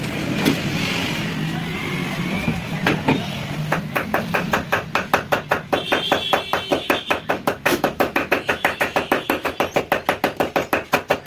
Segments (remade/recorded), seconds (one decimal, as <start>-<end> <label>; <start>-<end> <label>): 0.0-6.7 recorded; 6.7-9.5 remade; 9.5-11.3 recorded